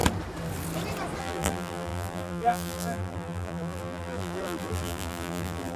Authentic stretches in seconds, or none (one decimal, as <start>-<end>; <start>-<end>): 0.0-1.2